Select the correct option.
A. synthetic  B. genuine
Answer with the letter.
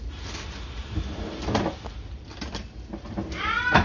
B